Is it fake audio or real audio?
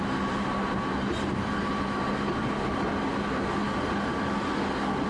real